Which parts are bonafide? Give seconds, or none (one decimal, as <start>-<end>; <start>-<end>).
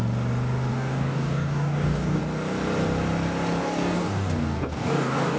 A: 0.0-0.7; 2.2-3.6